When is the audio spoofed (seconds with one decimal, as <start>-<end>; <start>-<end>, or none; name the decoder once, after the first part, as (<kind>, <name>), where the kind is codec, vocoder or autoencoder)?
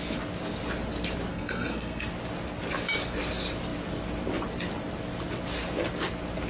1.3-2.1 (codec, SNAC)